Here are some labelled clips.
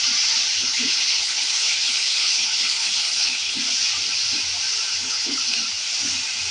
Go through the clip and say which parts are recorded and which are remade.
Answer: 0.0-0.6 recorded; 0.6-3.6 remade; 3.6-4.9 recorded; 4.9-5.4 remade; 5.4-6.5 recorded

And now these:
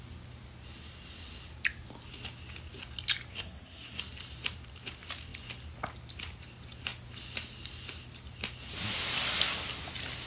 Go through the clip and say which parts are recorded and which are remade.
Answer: 0.0-3.3 recorded; 3.3-4.0 remade; 4.0-10.3 recorded

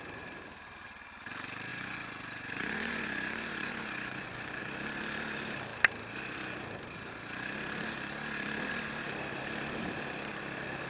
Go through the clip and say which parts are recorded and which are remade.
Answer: 0.0-1.7 recorded; 1.7-4.6 remade; 4.6-10.9 recorded

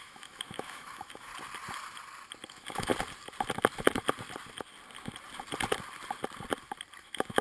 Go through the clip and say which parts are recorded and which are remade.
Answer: 0.0-1.3 remade; 1.3-2.5 recorded; 2.5-2.9 remade; 2.9-7.0 recorded; 7.0-7.4 remade

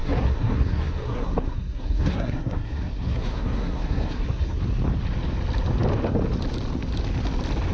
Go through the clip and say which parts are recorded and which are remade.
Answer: 0.0-4.6 remade; 4.6-7.7 recorded